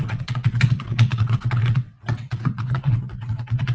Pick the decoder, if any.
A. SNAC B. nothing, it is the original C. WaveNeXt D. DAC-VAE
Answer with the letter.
C